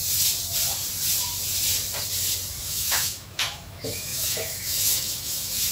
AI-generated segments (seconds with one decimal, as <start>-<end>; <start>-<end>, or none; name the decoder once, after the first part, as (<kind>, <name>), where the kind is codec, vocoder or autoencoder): 2.6-5.7 (autoencoder, DAC-VAE)

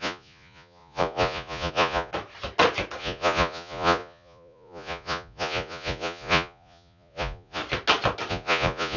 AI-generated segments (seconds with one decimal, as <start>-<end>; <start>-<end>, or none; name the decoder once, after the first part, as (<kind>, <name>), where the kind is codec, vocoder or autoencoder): 0.0-2.1 (vocoder, Vocos); 3.0-7.6; 8.3-9.0

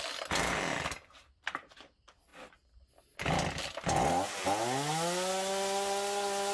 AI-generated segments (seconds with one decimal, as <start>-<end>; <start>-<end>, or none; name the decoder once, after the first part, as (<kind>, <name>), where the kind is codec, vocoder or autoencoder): none

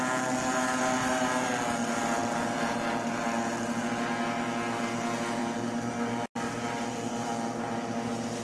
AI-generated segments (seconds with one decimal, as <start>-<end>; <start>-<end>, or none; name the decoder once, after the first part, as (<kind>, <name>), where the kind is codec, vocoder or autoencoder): none